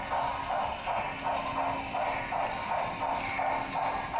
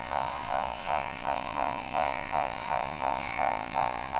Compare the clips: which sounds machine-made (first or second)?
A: second